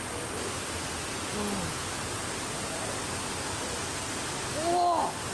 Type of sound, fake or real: real